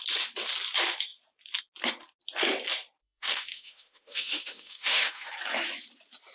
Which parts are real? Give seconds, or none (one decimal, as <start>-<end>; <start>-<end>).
0.0-3.0; 5.3-6.3